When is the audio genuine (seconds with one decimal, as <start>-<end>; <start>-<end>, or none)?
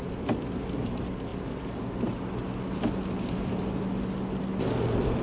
0.0-5.2